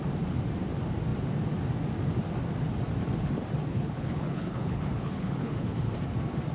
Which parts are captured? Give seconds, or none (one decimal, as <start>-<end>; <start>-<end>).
0.0-3.7; 5.9-6.5